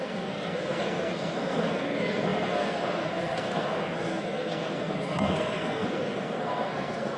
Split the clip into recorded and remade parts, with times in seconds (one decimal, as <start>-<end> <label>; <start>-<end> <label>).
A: 0.0-7.2 remade